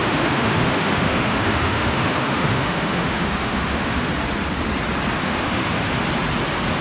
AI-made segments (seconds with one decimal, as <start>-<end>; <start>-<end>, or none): 0.0-4.1; 5.2-5.9